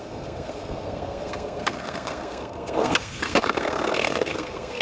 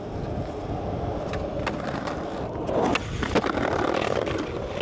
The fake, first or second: first